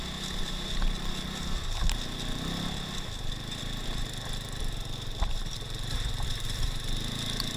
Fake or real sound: real